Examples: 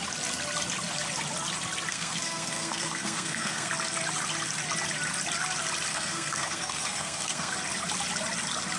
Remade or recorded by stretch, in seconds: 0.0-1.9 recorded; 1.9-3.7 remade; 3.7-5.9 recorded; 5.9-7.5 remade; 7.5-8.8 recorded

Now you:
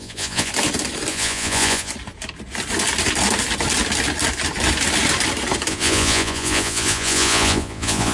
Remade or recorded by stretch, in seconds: 0.0-0.5 remade; 0.5-1.1 recorded; 1.1-1.9 remade; 1.9-5.7 recorded; 5.7-8.1 remade

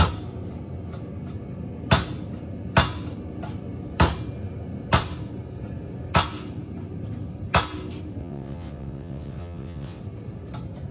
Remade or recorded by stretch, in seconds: 0.0-8.2 recorded; 8.2-10.0 remade; 10.0-10.9 recorded

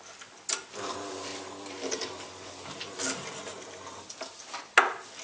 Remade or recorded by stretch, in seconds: 0.0-5.2 recorded

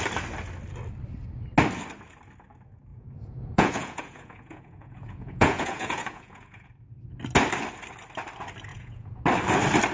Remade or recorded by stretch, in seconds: 0.0-2.9 recorded; 2.9-6.7 remade; 6.7-8.7 recorded; 8.7-9.2 remade; 9.2-9.9 recorded

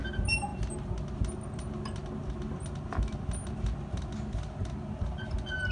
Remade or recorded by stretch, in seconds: 0.0-5.7 recorded

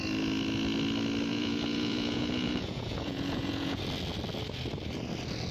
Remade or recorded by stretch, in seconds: 0.0-1.3 recorded; 1.3-3.8 remade; 3.8-5.5 recorded

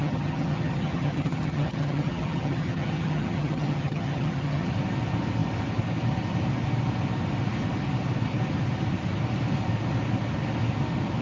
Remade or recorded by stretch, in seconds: 0.0-4.7 remade; 4.7-11.2 recorded